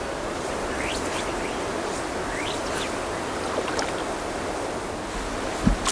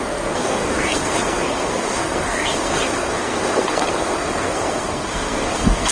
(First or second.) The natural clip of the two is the first